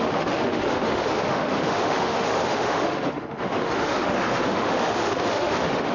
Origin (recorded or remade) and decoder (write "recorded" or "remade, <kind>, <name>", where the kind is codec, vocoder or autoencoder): remade, autoencoder, DAC-VAE